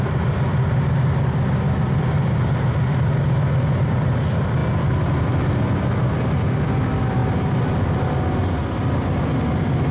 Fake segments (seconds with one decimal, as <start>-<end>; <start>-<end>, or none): none